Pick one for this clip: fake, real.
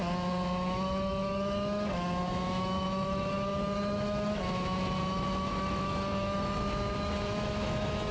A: fake